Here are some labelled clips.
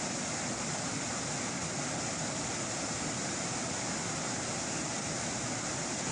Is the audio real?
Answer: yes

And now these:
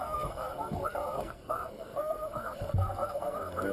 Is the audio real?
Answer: no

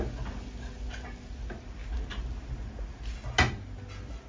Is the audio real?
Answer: yes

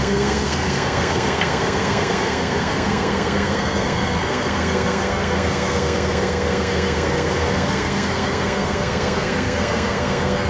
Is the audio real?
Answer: no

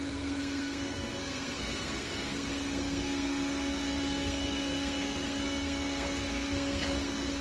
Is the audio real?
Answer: no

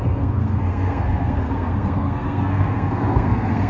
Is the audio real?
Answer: no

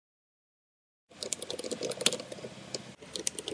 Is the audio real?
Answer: yes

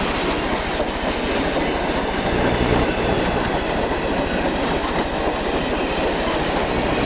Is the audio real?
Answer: yes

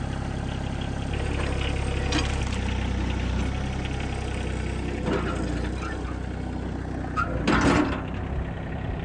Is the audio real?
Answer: yes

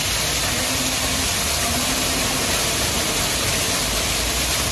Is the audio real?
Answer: yes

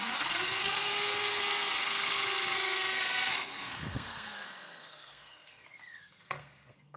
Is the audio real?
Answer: no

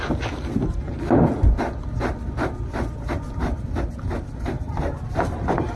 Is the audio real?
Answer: yes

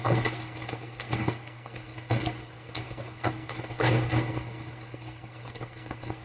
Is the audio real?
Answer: no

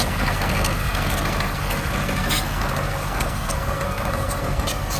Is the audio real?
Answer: no